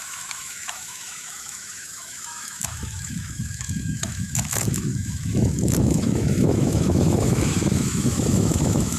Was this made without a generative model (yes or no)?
no